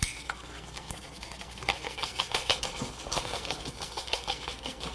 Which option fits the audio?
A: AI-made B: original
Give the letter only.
A